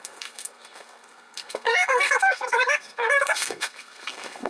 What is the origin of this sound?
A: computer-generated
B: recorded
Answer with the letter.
A